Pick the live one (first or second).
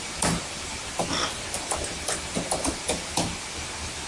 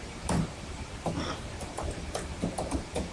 first